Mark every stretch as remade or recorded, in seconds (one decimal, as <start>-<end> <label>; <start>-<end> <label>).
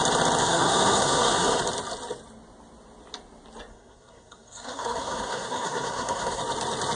0.0-0.4 recorded; 0.4-1.6 remade; 1.6-3.7 recorded; 3.7-6.4 remade; 6.4-7.0 recorded